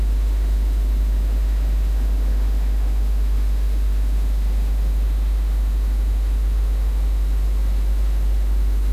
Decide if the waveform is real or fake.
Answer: fake